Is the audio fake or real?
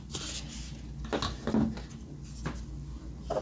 real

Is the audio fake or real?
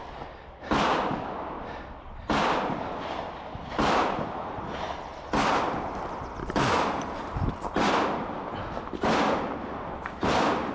real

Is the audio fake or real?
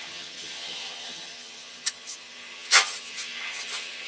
fake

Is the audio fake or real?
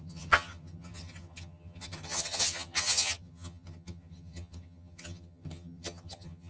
fake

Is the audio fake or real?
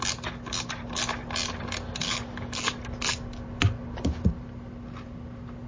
real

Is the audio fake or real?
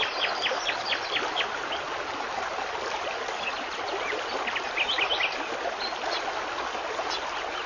real